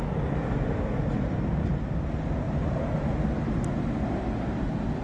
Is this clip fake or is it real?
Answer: real